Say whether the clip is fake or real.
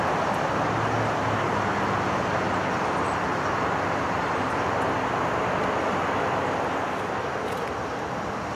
real